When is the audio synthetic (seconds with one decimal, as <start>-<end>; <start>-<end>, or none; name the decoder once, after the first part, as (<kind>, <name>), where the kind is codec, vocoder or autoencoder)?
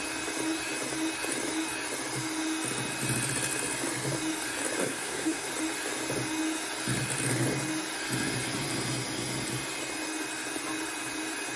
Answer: 4.8-5.5 (codec, SNAC)